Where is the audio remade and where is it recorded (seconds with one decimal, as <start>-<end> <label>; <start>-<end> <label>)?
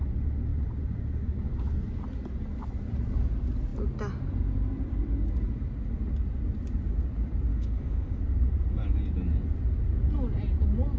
0.0-7.5 recorded; 7.5-8.2 remade; 8.2-11.0 recorded